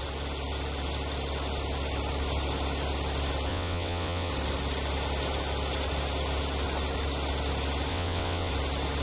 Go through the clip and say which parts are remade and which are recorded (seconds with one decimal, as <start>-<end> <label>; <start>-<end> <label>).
0.0-3.5 recorded; 3.5-4.3 remade; 4.3-7.9 recorded; 7.9-8.5 remade; 8.5-9.0 recorded